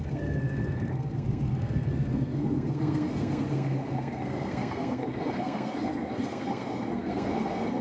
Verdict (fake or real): fake